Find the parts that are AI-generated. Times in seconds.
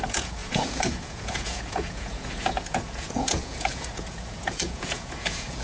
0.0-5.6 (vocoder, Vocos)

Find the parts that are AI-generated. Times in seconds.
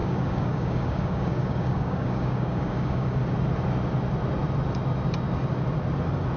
0.0-3.2 (codec, DAC)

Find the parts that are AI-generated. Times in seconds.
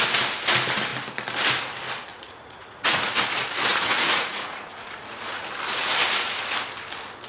2.1-3.0 (vocoder, Vocos); 3.7-5.4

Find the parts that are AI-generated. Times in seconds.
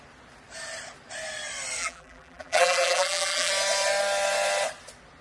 1.8-3.5 (vocoder, BigVGAN v2)